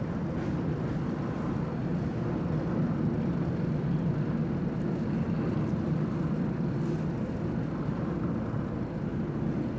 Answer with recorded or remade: recorded